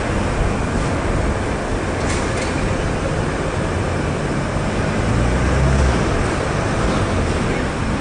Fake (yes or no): no